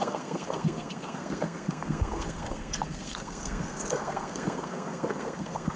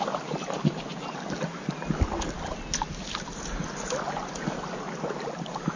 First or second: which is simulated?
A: first